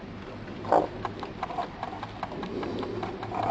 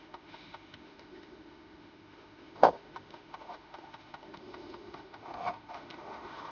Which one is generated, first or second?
second